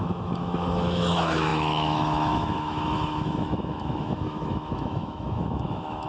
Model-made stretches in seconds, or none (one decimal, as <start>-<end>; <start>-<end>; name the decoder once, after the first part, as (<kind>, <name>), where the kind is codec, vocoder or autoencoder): 0.0-6.1 (autoencoder, DAC-VAE)